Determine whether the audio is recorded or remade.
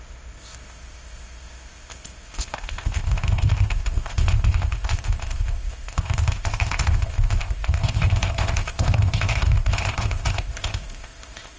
remade